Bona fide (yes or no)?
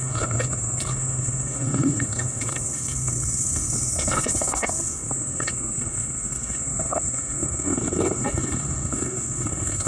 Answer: no